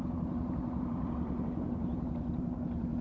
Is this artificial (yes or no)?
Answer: yes